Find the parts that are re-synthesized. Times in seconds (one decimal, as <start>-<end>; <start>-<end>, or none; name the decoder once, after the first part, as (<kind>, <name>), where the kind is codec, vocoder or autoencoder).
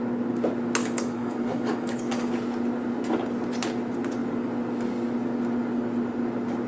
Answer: 0.8-2.3 (codec, DAC)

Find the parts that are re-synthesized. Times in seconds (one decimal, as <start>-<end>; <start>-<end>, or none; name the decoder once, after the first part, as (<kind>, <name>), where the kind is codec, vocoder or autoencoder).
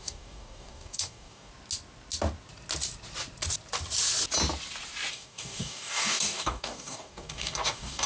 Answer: 0.0-1.5 (codec, DAC); 5.1-8.1